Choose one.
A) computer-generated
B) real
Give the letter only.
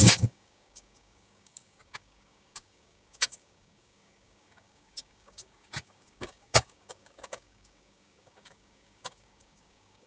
A